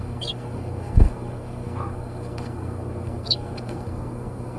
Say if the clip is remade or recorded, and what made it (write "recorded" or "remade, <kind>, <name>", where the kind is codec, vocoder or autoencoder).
remade, codec, SNAC